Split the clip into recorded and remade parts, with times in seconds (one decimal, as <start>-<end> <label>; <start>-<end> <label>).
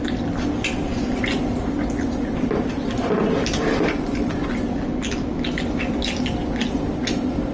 0.0-7.5 recorded